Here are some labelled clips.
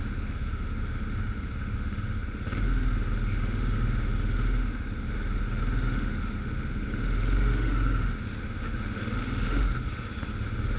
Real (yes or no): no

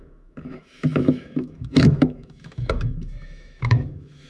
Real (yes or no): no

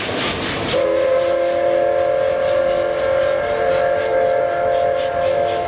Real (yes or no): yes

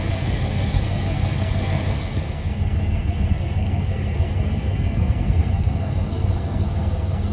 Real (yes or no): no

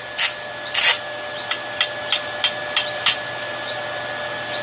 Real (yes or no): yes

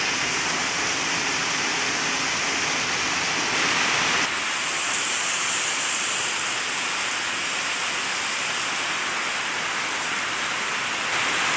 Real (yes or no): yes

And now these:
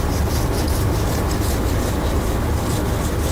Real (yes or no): yes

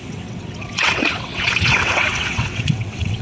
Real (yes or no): no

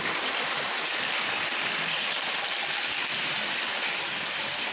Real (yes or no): yes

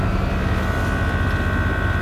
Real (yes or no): yes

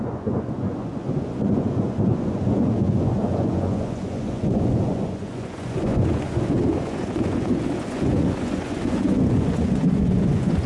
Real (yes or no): no